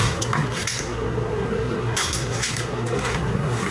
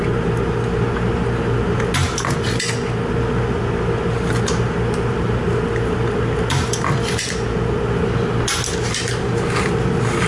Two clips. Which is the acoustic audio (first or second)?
second